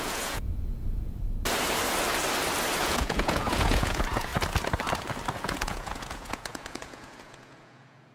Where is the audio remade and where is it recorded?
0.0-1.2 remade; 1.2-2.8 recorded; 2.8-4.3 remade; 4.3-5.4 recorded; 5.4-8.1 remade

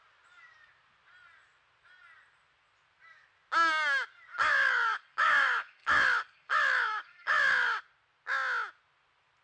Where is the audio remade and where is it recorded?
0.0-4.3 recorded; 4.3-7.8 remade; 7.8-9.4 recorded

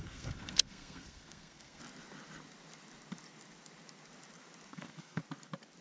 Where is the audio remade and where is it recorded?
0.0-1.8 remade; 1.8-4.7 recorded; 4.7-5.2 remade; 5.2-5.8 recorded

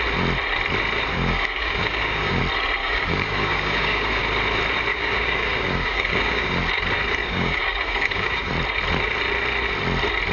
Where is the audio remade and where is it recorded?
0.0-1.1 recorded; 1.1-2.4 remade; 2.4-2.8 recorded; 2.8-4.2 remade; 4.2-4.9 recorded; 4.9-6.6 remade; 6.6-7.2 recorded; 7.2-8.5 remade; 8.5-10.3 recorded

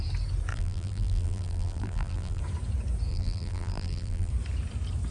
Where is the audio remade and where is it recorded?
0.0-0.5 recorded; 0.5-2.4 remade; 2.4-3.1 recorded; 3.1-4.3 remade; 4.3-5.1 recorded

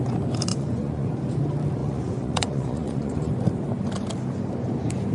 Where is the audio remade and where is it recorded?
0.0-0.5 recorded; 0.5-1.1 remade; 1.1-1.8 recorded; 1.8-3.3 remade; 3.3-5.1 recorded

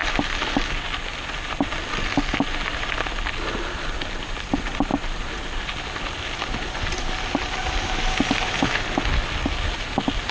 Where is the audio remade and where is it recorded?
0.0-10.3 recorded

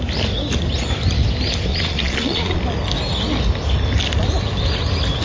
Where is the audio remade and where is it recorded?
0.0-1.7 recorded; 1.7-2.6 remade; 2.6-5.2 recorded